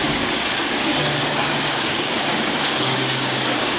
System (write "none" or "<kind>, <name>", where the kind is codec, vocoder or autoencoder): codec, DAC